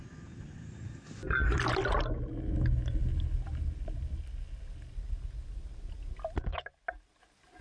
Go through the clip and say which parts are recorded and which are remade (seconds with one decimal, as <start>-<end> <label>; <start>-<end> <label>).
0.0-7.6 recorded